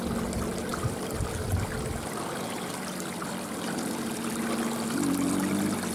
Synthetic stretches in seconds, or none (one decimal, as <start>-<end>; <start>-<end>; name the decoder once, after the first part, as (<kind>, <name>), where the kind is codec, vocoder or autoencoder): none

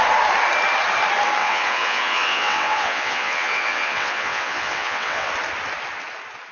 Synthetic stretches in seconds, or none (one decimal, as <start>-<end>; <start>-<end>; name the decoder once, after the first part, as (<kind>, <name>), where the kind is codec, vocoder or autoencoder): 1.4-5.3 (vocoder, WaveNeXt)

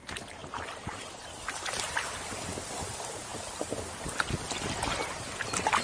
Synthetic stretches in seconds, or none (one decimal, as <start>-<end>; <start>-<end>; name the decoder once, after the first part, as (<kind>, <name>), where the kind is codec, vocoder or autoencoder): none

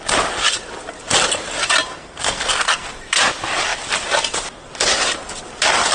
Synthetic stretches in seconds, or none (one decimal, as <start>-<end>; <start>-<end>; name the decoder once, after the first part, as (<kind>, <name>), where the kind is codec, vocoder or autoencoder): 2.0-2.9 (codec, SNAC)

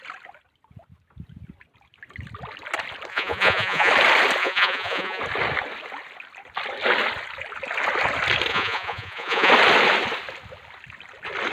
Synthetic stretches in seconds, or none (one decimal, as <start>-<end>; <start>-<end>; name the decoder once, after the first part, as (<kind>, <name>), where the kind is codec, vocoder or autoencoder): 3.1-3.9 (vocoder, Vocos); 4.4-5.2; 8.5-9.5

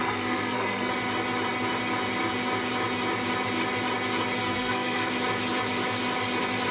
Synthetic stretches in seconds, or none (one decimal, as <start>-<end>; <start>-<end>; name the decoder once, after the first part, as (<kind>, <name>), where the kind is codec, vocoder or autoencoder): 0.0-0.9 (codec, SNAC); 4.4-5.1